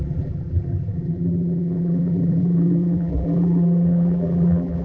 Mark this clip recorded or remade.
remade